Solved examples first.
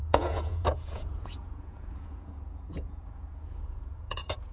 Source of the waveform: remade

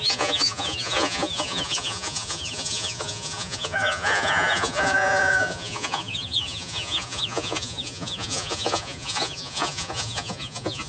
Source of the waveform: remade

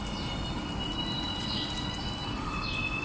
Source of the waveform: recorded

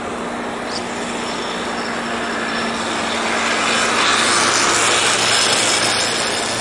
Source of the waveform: recorded